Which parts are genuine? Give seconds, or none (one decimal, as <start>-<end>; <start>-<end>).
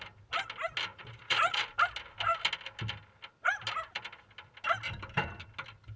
0.0-0.9; 1.6-6.0